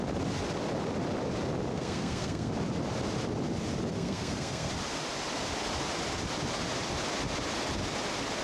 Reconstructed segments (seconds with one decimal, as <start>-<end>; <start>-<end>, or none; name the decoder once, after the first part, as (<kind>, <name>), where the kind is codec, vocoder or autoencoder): 1.7-2.5 (codec, SNAC); 3.9-4.7